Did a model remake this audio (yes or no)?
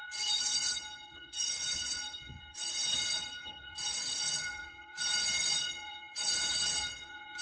yes